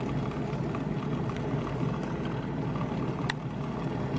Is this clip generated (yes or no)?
yes